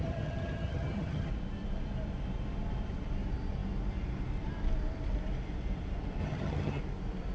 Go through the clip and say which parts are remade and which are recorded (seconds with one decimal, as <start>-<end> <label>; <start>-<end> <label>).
0.0-1.3 remade; 1.3-6.2 recorded; 6.2-6.8 remade; 6.8-7.3 recorded